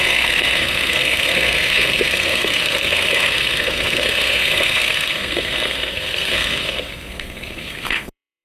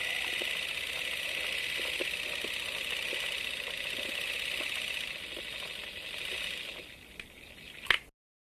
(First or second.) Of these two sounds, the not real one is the first